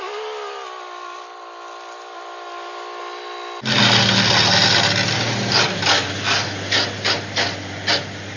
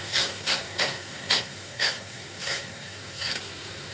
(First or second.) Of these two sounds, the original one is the first